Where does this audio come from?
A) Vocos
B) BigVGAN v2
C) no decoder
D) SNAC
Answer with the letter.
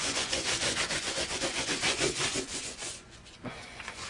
A